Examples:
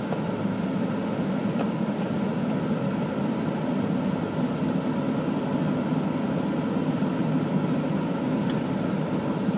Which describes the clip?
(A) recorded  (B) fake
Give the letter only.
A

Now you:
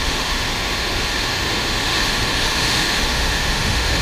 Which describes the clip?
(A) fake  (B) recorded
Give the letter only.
A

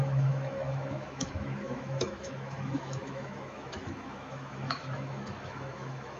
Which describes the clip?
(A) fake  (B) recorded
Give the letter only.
A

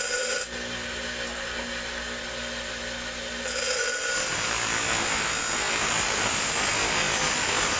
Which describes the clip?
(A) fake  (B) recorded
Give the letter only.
B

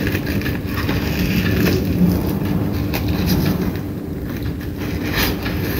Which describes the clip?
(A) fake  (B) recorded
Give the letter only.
B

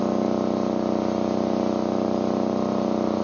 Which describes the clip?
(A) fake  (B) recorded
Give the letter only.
B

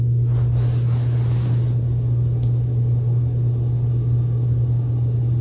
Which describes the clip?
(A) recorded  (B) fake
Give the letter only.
A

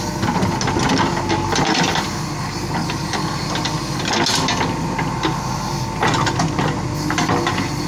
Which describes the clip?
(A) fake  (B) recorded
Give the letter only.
B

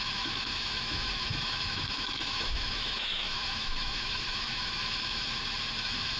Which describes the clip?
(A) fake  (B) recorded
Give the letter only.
A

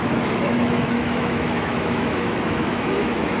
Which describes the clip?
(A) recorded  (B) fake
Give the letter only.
B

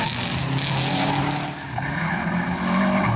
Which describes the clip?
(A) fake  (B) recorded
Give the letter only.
B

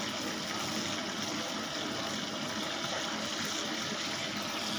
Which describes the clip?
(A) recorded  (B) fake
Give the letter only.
A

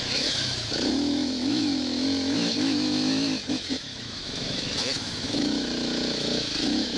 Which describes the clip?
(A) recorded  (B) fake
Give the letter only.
B